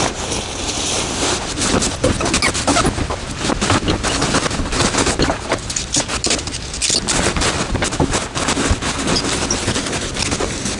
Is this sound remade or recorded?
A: recorded